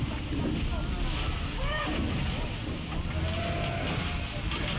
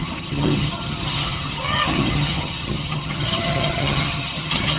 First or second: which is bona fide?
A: first